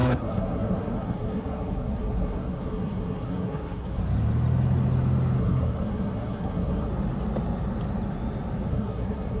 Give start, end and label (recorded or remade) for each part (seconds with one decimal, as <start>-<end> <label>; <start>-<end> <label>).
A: 0.0-4.0 remade; 4.0-5.4 recorded; 5.4-6.9 remade; 6.9-8.7 recorded; 8.7-9.4 remade